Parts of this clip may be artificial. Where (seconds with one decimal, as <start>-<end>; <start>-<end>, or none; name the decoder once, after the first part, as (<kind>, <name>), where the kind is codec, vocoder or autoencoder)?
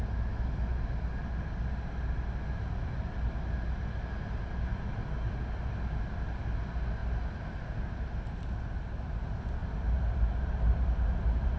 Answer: none